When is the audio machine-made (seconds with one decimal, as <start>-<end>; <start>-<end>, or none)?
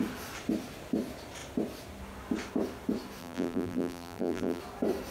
3.2-4.6